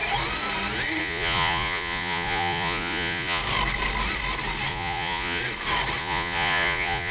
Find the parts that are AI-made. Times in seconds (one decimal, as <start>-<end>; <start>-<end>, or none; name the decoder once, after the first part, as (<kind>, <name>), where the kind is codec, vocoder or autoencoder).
1.0-3.4 (vocoder, Vocos); 4.7-5.4; 6.0-7.1